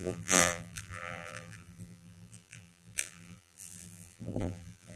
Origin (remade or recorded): remade